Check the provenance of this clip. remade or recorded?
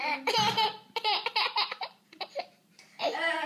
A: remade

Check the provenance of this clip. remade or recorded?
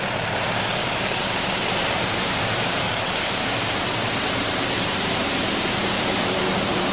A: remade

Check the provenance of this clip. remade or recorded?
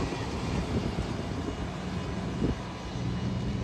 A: recorded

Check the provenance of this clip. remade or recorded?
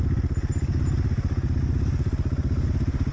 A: recorded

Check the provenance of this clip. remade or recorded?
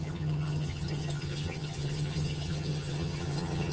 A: remade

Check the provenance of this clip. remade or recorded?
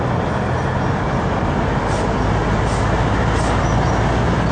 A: recorded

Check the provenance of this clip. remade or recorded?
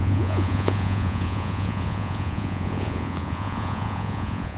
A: remade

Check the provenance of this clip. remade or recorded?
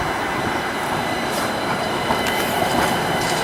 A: remade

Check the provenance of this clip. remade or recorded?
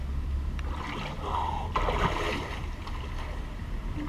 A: remade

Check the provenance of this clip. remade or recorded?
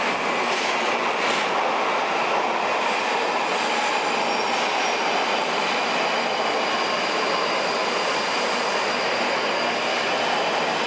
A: recorded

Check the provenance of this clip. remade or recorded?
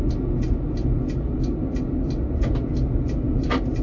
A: recorded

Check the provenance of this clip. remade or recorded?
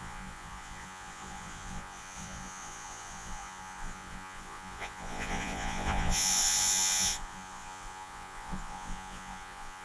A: remade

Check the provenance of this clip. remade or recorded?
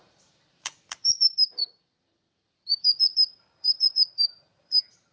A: remade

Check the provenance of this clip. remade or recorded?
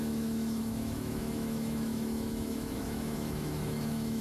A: remade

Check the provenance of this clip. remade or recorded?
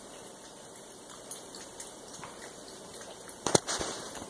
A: remade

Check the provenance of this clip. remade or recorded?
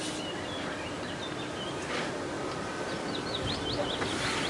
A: recorded